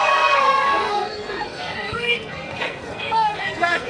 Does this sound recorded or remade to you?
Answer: remade